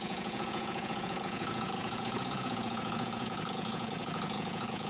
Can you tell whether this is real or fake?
fake